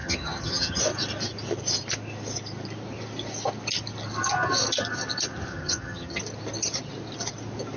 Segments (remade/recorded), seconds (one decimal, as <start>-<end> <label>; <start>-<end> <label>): 0.0-0.8 remade; 0.8-5.5 recorded; 5.5-6.2 remade; 6.2-7.8 recorded